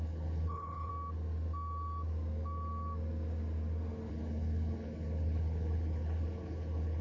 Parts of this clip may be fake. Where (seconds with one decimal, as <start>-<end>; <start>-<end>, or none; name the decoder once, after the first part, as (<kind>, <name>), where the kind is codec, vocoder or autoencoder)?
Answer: 0.0-0.9 (codec, HILCodec); 4.1-7.0